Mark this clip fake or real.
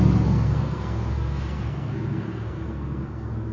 fake